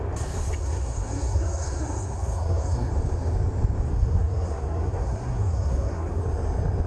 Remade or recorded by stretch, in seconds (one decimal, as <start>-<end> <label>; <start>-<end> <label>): 0.0-0.6 recorded; 0.6-2.9 remade; 2.9-3.9 recorded; 3.9-6.2 remade; 6.2-6.9 recorded